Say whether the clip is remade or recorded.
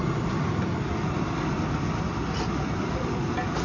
recorded